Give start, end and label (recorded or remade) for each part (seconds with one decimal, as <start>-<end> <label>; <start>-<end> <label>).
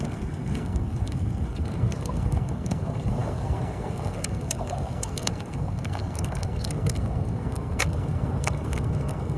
0.0-9.4 remade